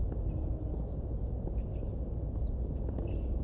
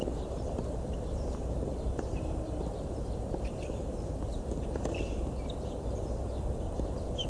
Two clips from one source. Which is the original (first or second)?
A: first